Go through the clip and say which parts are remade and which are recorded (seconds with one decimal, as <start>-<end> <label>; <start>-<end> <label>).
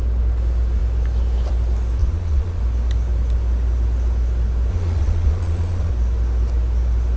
0.0-2.0 recorded; 2.0-2.6 remade; 2.6-4.7 recorded; 4.7-5.9 remade; 5.9-7.2 recorded